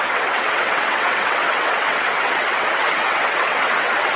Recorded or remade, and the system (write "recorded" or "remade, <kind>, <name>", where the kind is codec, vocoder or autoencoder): remade, vocoder, WaveNeXt